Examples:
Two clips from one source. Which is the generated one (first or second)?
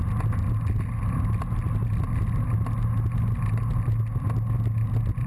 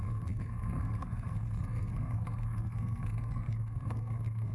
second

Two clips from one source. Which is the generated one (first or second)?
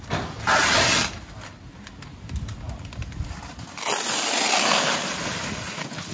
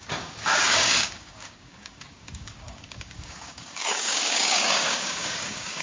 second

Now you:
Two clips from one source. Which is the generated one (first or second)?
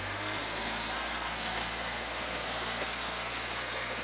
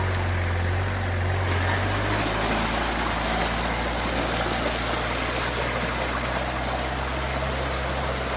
first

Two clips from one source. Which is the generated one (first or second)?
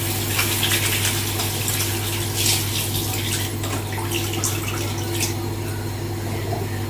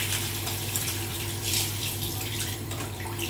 second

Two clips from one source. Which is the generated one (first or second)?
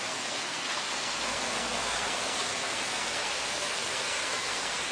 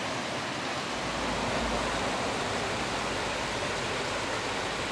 first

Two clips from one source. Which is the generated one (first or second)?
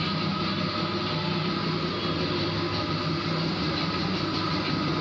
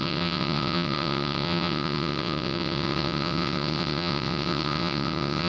second